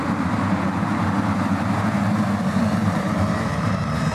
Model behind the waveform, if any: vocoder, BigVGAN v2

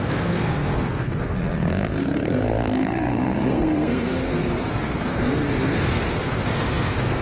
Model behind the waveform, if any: codec, SNAC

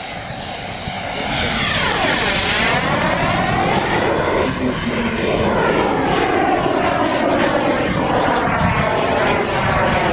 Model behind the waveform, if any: none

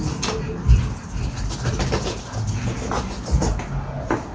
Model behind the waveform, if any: none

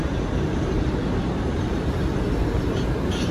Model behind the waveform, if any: vocoder, BigVGAN v2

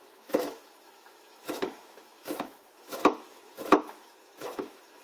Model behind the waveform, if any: autoencoder, DAC-VAE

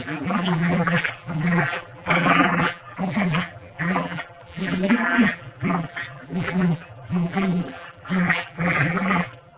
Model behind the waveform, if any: vocoder, BigVGAN v2